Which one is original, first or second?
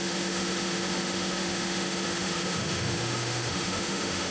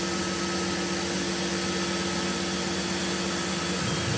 second